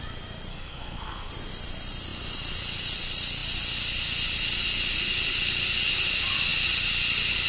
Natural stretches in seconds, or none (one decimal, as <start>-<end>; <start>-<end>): 0.0-0.5; 1.3-7.5